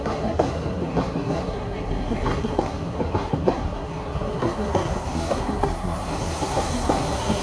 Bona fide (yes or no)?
no